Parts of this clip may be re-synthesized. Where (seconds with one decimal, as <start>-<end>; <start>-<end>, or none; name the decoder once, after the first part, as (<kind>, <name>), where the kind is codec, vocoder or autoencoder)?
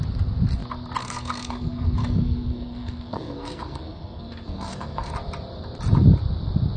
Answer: 1.0-5.1 (codec, SNAC)